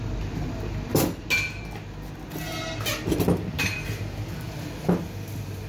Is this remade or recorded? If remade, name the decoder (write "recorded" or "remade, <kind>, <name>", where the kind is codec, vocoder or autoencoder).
recorded